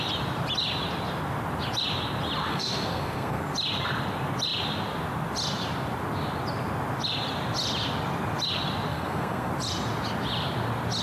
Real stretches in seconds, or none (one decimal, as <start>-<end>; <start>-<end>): 0.0-2.4; 3.4-8.9; 9.5-11.0